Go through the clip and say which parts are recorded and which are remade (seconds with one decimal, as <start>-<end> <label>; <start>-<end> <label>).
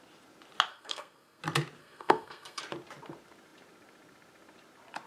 0.0-0.7 recorded; 0.7-1.4 remade; 1.4-1.8 recorded; 1.8-2.6 remade; 2.6-5.1 recorded